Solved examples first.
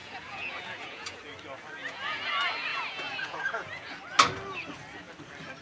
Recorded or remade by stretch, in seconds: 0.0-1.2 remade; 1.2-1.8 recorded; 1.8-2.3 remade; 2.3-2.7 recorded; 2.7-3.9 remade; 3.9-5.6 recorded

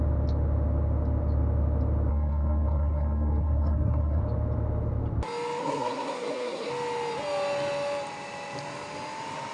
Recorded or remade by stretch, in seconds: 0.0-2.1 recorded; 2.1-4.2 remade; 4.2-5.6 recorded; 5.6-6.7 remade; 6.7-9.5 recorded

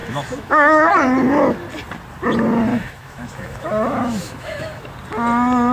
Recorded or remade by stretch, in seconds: 0.0-0.9 remade; 0.9-2.7 recorded; 2.7-4.9 remade; 4.9-5.7 recorded

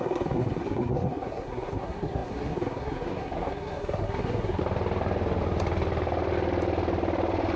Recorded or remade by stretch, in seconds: 0.0-4.6 remade; 4.6-7.6 recorded